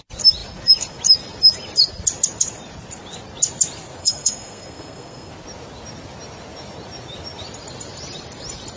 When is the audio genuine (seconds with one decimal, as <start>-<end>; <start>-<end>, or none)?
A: 0.0-4.0; 5.3-8.8